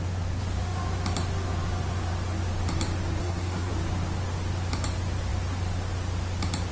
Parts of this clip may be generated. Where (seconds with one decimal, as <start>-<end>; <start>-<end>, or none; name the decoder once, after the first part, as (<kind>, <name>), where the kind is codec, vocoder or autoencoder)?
3.2-3.7 (codec, SNAC)